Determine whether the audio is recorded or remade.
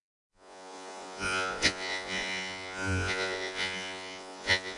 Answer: remade